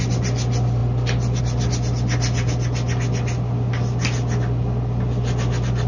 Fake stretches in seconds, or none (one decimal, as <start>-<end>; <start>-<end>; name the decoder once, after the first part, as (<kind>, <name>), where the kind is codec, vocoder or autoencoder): none